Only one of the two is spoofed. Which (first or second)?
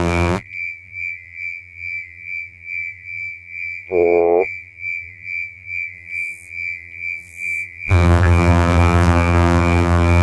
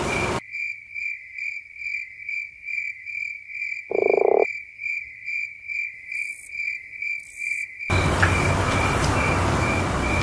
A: first